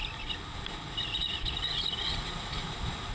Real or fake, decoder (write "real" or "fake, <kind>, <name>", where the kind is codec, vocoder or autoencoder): real